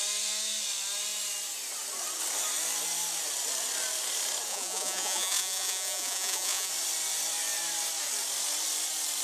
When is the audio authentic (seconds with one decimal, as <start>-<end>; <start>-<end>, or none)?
0.0-4.5; 6.7-9.2